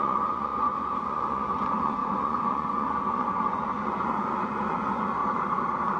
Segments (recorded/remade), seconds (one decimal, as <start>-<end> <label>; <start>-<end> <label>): 0.0-5.2 remade; 5.2-6.0 recorded